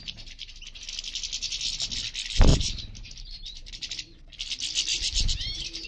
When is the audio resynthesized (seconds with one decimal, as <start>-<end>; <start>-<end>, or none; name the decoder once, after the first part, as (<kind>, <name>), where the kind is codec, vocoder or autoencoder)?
2.5-3.7 (vocoder, BigVGAN v2); 4.9-5.9